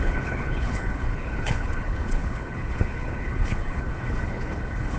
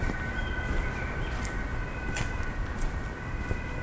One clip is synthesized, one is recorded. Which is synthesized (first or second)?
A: first